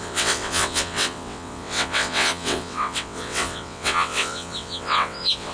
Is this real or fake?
fake